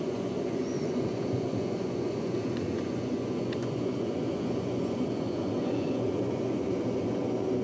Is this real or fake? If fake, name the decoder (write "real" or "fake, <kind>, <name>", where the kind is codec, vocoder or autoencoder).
fake, vocoder, Vocos